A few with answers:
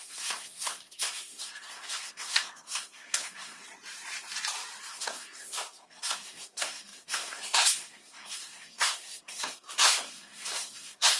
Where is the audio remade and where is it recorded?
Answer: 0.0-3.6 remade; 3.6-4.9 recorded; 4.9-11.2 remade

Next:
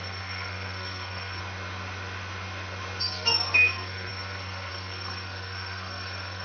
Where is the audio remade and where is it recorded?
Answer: 0.0-1.4 remade; 1.4-3.0 recorded; 3.0-6.4 remade

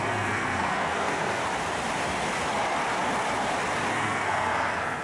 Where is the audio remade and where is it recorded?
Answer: 0.0-1.4 remade; 1.4-3.9 recorded; 3.9-5.0 remade

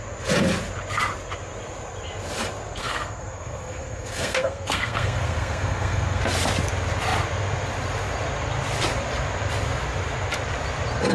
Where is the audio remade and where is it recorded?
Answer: 0.0-2.8 recorded; 2.8-6.2 remade; 6.2-11.1 recorded